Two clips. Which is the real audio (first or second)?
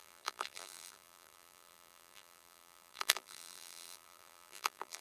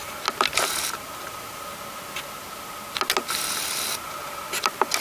second